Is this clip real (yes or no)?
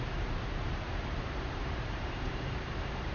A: no